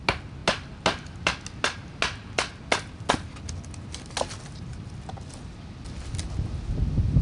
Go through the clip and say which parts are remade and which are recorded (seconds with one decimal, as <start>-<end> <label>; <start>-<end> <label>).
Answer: 0.0-7.2 recorded